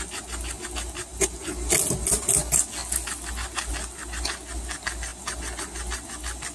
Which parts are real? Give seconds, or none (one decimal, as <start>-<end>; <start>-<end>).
0.0-6.5